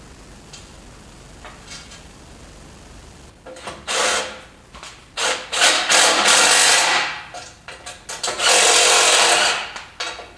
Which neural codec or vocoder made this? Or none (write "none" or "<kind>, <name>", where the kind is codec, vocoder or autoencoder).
none